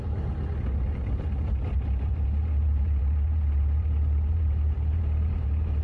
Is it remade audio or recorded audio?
remade